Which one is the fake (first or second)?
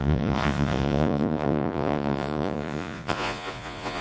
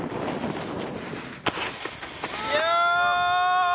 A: first